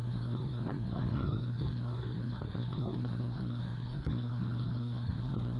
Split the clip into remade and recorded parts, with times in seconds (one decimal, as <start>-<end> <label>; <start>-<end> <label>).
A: 0.0-5.6 remade